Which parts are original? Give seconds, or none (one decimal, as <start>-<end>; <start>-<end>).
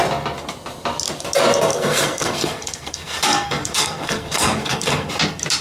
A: 0.0-1.7; 5.1-5.6